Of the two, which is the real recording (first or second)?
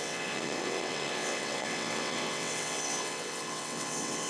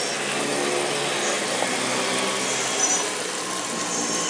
second